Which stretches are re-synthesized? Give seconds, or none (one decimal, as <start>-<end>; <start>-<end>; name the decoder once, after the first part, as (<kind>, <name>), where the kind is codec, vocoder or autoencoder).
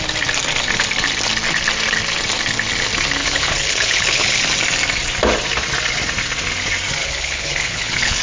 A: 3.2-4.4 (codec, HILCodec); 7.0-8.2